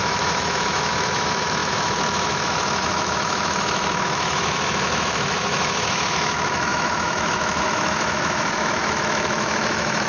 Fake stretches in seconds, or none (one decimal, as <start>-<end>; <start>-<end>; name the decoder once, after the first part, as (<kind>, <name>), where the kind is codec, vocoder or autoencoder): 0.0-10.1 (autoencoder, DAC-VAE)